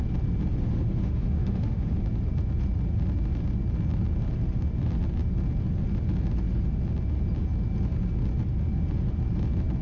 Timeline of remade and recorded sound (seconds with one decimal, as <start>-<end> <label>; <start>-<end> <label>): 0.0-0.5 recorded; 0.5-1.9 remade; 1.9-9.8 recorded